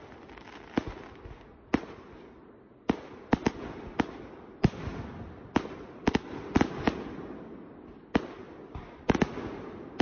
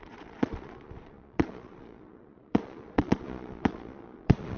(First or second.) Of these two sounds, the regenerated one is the second